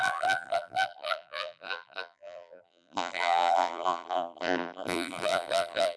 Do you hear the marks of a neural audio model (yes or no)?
yes